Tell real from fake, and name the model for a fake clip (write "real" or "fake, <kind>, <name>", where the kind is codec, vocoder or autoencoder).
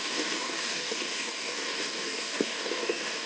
fake, codec, DAC